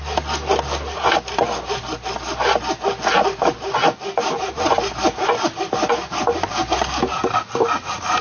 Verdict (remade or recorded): recorded